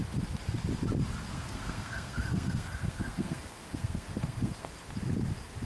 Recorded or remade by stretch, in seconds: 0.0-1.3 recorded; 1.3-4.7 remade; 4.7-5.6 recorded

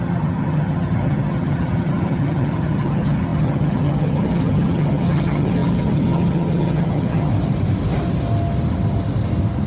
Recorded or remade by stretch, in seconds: 0.0-7.3 remade; 7.3-9.7 recorded